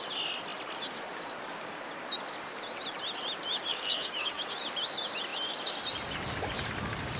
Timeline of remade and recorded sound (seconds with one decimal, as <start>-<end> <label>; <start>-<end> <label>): 0.0-3.7 recorded; 3.7-4.4 remade; 4.4-7.2 recorded